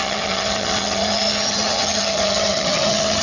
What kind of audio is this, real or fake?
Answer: fake